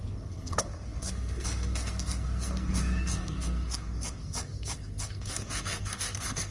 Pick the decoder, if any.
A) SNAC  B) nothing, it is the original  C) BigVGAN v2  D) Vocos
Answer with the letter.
A